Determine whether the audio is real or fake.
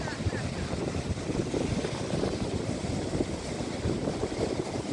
fake